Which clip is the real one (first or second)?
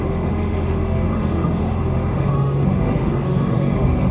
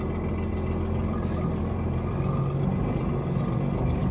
second